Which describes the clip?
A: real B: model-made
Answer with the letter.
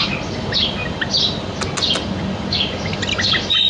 A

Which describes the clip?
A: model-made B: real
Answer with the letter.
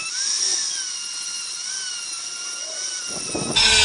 B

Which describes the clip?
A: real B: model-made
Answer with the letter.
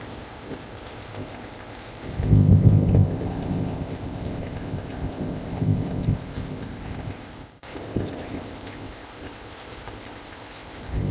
B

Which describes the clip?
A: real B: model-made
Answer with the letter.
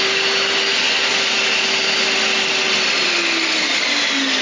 A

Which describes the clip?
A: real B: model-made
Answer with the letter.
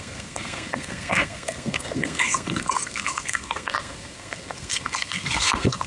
B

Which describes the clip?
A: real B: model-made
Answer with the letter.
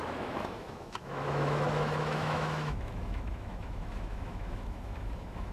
B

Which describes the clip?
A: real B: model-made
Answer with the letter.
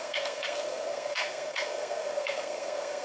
B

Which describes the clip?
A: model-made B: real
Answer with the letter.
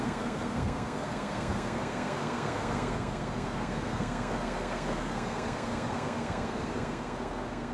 A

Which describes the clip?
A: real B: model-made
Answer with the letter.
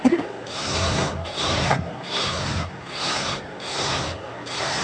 B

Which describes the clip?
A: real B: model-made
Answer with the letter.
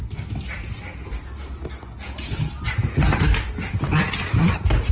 A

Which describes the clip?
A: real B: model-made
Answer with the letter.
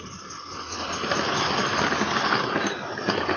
A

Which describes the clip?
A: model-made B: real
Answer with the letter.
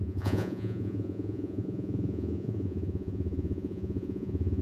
A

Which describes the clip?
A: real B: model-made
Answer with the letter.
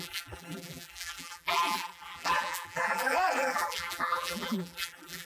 B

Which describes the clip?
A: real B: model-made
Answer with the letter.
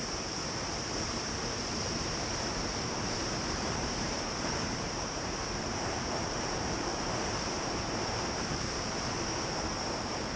B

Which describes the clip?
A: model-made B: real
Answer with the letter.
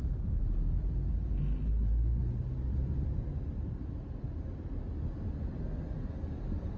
B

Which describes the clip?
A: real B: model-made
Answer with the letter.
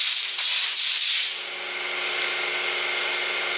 A